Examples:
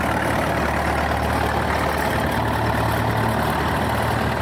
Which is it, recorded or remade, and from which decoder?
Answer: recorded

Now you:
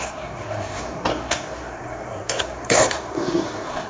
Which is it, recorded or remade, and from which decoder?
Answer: remade, codec, SNAC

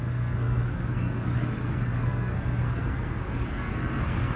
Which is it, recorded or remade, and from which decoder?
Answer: remade, codec, SNAC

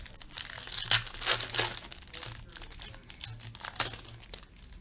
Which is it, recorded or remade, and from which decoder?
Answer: recorded